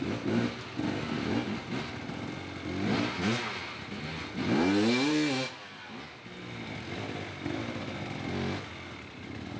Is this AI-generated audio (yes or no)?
no